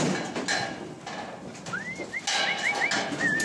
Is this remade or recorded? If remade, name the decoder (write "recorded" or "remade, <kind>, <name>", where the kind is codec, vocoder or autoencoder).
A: recorded